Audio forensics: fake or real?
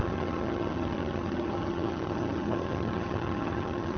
fake